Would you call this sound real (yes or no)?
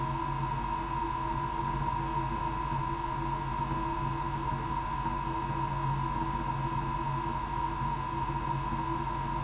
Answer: yes